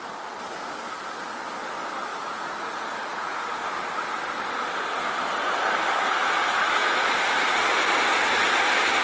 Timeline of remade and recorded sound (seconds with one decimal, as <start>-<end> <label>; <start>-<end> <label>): 0.0-2.1 recorded; 2.1-3.4 remade; 3.4-6.8 recorded; 6.8-7.5 remade; 7.5-9.0 recorded